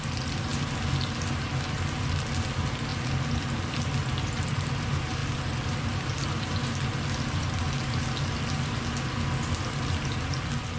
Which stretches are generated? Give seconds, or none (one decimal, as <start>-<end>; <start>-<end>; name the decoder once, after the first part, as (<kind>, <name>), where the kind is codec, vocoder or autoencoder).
none